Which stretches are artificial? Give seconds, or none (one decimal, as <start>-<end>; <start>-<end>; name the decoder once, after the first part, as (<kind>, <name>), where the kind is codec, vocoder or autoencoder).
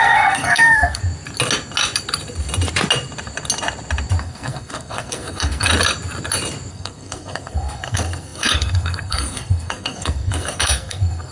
0.0-1.0 (codec, SNAC); 4.2-5.7; 6.7-11.3